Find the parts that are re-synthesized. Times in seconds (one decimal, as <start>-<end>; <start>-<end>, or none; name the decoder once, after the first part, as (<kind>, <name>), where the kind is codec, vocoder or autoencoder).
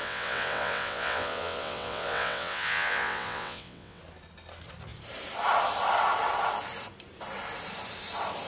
0.0-4.0 (vocoder, WaveNeXt)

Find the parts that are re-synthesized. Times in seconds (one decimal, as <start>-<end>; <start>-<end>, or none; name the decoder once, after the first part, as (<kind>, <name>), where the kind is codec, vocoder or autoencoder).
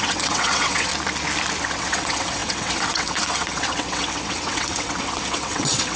0.0-0.9 (vocoder, WaveNeXt); 1.6-6.0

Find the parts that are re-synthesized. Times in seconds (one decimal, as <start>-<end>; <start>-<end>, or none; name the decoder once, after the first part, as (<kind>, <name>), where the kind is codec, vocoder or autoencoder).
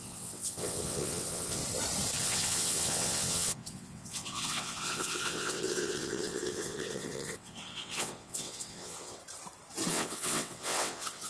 0.0-1.6 (vocoder, WaveNeXt); 2.2-9.2; 9.9-11.3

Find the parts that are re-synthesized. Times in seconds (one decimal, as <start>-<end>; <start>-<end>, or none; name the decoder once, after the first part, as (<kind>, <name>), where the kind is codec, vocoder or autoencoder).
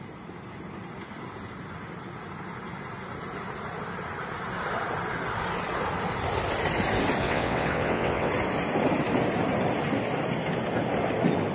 7.2-8.3 (vocoder, WaveNeXt)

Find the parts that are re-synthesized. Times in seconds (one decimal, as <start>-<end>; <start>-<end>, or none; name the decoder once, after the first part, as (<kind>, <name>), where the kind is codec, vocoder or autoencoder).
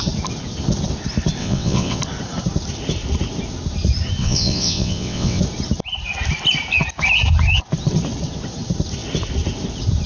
1.4-2.0 (vocoder, WaveNeXt); 4.2-5.4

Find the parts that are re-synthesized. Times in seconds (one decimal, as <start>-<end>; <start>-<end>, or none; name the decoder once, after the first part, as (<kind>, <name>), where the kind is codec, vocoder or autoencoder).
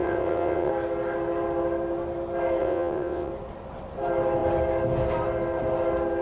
0.0-0.7 (vocoder, WaveNeXt); 2.6-3.3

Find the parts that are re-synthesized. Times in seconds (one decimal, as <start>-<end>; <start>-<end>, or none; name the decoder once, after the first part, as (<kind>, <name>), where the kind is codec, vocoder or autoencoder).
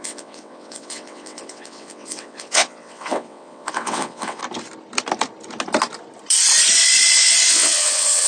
0.0-4.4 (vocoder, WaveNeXt); 7.5-8.3